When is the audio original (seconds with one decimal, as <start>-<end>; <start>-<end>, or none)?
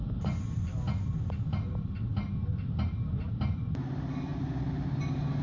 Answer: 0.0-5.4